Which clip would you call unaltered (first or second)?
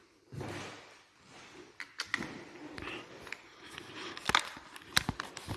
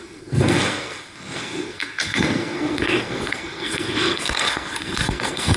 first